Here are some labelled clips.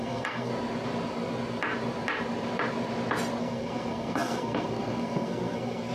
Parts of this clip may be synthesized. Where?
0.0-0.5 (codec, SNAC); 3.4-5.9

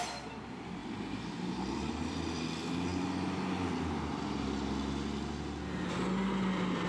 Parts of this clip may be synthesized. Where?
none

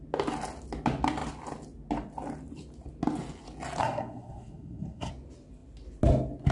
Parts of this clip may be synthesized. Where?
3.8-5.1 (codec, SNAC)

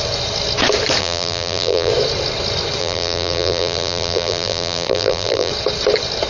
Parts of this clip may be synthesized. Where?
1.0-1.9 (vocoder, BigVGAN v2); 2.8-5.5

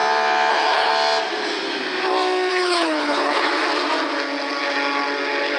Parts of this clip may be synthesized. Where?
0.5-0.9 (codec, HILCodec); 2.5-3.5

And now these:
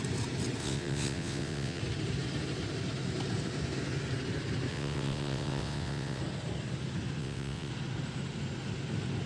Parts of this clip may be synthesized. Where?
0.6-1.8 (vocoder, WaveNeXt); 4.7-6.2; 7.2-7.7

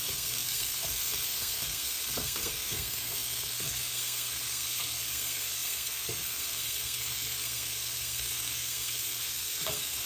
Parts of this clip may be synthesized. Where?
0.0-10.1 (codec, SNAC)

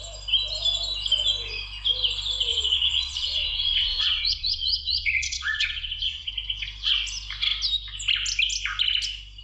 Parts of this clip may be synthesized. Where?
2.5-6.3 (vocoder, Vocos)